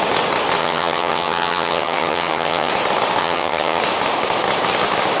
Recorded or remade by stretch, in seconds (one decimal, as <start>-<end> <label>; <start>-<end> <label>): 0.0-0.6 recorded; 0.6-2.7 remade; 2.7-3.2 recorded; 3.2-3.8 remade; 3.8-5.2 recorded

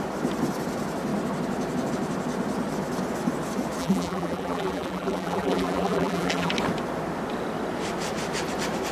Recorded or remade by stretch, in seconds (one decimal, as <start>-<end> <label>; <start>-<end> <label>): 0.0-3.8 recorded; 3.8-6.5 remade; 6.5-8.9 recorded

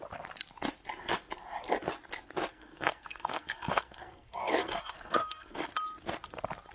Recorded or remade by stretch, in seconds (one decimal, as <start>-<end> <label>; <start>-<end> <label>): 0.0-2.5 recorded; 2.5-5.7 remade; 5.7-6.7 recorded

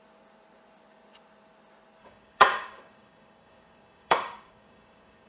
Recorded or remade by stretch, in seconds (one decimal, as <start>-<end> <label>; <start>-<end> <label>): 0.0-2.0 recorded; 2.0-5.3 remade

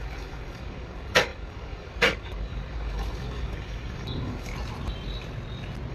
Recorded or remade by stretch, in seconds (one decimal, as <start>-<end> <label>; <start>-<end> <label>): 0.0-4.5 remade; 4.5-5.9 recorded

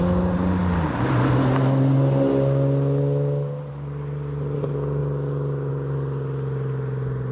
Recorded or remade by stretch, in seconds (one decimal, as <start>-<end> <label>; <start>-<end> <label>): 0.0-7.3 recorded

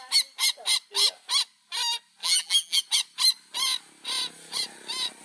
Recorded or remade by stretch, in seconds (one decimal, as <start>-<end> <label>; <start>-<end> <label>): 0.0-2.2 recorded; 2.2-2.8 remade; 2.8-5.2 recorded